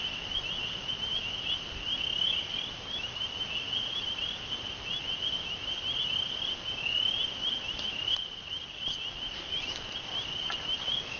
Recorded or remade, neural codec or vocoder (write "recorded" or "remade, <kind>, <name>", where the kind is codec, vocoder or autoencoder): recorded